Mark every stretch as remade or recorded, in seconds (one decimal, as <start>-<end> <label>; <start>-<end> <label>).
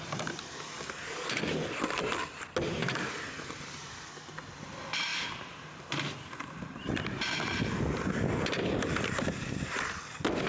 0.0-10.5 recorded